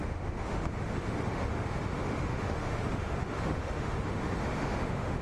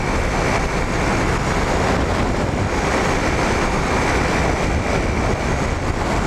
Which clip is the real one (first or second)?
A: second